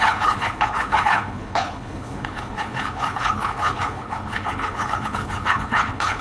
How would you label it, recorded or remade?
remade